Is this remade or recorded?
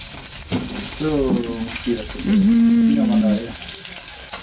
recorded